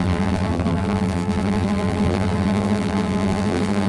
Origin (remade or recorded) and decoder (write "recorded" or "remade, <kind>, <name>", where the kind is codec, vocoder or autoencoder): remade, vocoder, BigVGAN v2